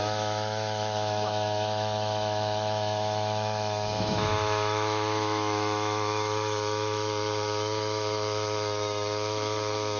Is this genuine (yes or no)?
no